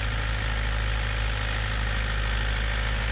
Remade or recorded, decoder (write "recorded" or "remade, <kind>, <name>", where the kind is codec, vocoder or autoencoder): recorded